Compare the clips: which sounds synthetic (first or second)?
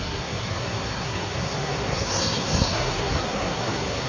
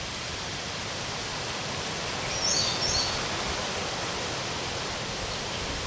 first